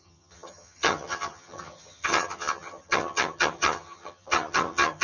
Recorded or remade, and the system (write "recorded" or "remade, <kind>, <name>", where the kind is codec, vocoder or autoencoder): remade, vocoder, HiFi-GAN